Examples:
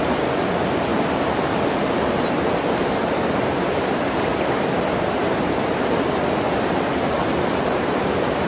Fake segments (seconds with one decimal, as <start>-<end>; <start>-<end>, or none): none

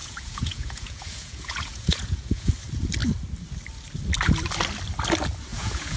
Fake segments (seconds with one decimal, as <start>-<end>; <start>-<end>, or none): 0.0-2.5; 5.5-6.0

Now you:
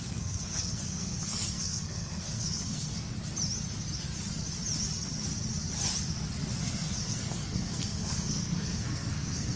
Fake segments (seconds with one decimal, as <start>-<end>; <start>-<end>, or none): 0.0-3.1; 6.6-9.6

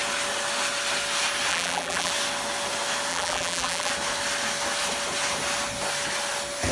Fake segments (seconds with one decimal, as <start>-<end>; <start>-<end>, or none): 1.5-2.1; 3.1-3.9